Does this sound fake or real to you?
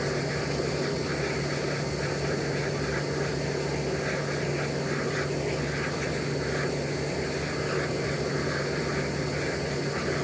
real